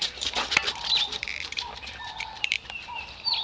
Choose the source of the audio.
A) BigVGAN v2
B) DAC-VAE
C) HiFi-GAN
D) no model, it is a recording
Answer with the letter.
A